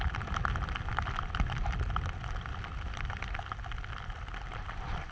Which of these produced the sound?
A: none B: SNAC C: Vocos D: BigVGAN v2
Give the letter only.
A